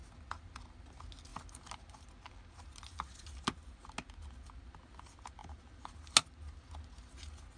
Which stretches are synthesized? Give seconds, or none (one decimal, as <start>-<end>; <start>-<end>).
none